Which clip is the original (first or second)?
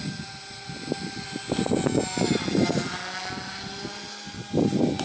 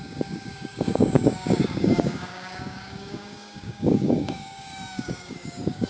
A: first